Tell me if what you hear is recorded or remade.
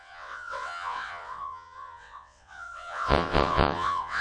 remade